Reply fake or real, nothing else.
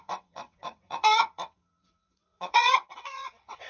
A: fake